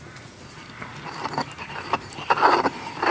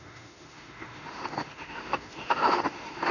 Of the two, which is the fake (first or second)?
second